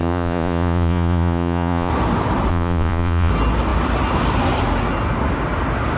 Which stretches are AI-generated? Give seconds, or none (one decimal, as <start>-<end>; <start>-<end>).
0.0-1.9; 2.5-3.3